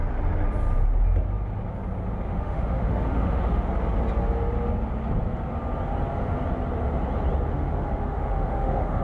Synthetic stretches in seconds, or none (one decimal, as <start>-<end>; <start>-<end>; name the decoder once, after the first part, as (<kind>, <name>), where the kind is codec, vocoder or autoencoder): 2.3-3.7 (autoencoder, DAC-VAE); 7.5-9.0